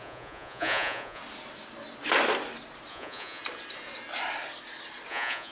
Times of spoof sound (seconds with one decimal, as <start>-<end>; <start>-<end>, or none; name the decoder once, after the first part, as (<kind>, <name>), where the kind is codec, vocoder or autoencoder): 0.0-1.2 (vocoder, Vocos); 2.9-3.4; 5.1-5.5